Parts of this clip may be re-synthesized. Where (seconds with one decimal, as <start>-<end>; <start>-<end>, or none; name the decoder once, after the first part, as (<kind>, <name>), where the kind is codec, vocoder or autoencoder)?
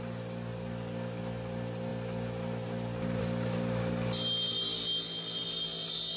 none